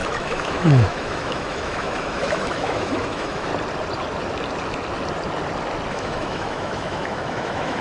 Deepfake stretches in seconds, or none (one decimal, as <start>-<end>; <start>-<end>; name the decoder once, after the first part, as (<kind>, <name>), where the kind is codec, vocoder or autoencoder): 0.0-3.5 (autoencoder, DAC-VAE); 5.9-7.8